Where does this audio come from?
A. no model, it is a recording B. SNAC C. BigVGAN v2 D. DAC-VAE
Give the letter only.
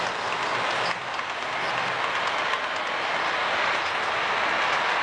A